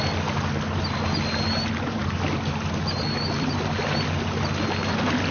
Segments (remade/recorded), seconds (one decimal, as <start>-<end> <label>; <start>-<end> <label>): 0.0-5.3 recorded